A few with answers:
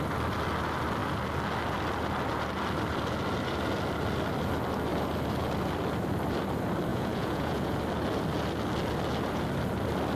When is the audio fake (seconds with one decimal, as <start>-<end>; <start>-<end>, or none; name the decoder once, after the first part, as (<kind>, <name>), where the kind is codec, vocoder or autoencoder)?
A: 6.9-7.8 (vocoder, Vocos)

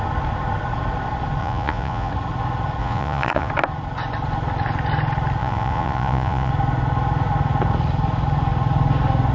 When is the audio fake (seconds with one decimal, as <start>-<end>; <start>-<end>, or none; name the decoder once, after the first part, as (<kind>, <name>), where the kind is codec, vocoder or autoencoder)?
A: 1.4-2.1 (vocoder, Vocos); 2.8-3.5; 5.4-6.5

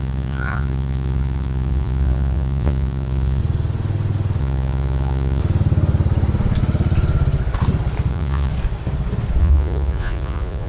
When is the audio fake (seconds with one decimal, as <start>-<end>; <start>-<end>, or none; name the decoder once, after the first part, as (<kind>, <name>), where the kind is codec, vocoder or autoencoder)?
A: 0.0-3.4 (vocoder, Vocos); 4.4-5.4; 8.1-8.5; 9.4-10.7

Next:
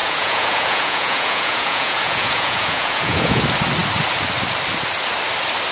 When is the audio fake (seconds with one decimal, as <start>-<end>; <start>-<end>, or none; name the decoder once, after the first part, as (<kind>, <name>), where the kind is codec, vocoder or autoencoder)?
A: 0.0-3.4 (vocoder, Vocos)

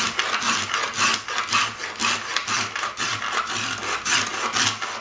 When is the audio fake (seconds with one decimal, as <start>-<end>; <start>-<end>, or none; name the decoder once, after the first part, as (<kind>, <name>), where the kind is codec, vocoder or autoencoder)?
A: none

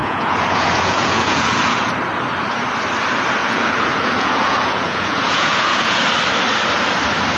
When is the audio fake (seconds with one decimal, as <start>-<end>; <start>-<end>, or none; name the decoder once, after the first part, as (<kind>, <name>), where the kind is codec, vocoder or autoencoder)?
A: 0.0-1.9 (vocoder, Vocos); 3.4-6.0

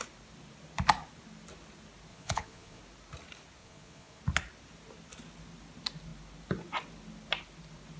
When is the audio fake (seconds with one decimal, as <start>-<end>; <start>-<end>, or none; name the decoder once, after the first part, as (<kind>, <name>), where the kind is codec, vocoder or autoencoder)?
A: 2.1-2.8 (vocoder, Vocos); 3.6-4.2

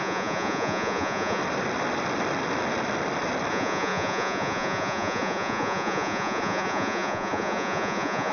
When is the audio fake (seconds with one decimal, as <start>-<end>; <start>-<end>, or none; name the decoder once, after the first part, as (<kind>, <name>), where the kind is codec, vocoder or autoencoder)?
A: 0.0-1.4 (vocoder, Vocos); 3.5-8.3